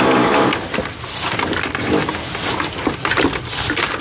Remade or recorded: recorded